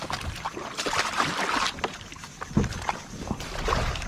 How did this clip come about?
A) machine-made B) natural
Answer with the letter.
B